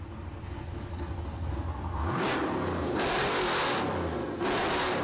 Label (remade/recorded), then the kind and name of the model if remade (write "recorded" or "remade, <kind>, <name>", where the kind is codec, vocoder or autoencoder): recorded